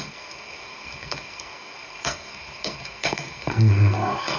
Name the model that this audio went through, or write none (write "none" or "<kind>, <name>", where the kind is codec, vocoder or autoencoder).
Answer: codec, SNAC